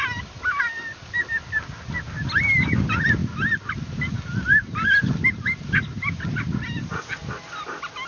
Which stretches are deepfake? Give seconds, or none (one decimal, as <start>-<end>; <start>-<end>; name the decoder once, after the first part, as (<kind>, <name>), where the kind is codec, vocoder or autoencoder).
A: none